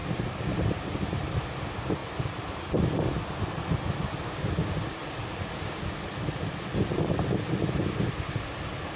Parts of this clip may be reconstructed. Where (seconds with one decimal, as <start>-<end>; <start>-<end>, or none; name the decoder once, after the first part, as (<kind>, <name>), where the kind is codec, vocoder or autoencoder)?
none